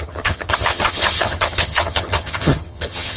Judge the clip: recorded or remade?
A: remade